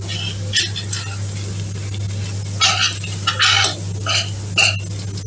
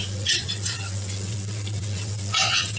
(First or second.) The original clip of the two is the first